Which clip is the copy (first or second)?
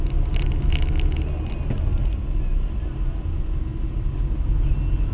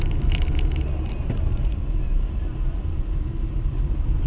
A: second